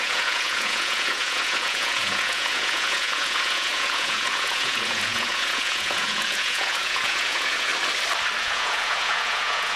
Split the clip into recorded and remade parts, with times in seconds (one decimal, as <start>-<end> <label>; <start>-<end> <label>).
0.0-7.7 remade; 7.7-8.4 recorded; 8.4-9.8 remade